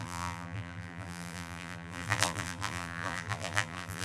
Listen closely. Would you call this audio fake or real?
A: fake